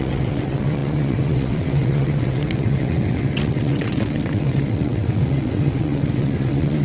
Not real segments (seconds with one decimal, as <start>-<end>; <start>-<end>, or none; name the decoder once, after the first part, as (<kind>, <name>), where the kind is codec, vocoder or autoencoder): 0.0-6.8 (vocoder, WaveNeXt)